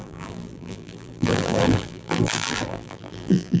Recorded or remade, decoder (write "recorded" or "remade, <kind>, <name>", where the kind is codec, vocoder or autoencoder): remade, vocoder, BigVGAN v2